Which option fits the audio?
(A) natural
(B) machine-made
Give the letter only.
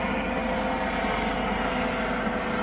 A